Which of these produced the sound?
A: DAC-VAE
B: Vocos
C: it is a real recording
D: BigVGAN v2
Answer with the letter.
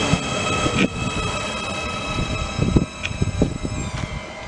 C